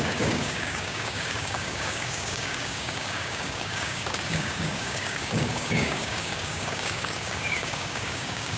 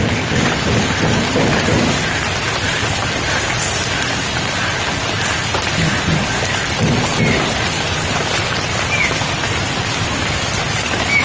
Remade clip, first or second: first